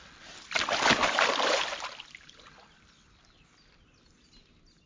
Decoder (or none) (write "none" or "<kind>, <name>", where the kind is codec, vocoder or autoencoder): none